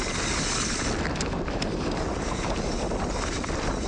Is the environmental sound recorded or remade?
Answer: recorded